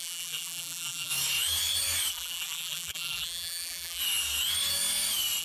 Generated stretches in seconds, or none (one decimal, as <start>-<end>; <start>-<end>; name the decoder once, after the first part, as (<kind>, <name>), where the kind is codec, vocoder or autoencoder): 0.0-1.1 (vocoder, BigVGAN v2); 2.1-4.0